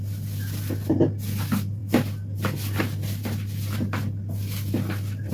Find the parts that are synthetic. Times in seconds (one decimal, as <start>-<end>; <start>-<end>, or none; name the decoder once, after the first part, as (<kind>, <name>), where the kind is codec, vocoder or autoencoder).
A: none